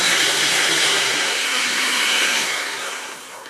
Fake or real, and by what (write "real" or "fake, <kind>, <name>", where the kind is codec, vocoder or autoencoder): fake, codec, SNAC